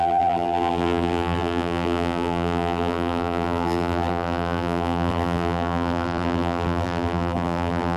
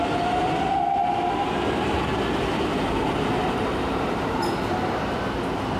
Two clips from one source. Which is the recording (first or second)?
second